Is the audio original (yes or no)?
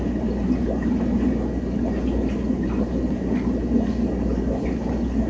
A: yes